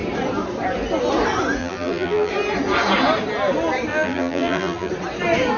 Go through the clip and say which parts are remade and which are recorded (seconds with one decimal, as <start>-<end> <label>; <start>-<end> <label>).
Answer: 0.0-1.6 recorded; 1.6-2.3 remade; 2.3-3.9 recorded; 3.9-4.9 remade; 4.9-5.6 recorded